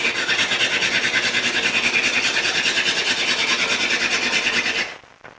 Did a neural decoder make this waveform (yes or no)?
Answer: no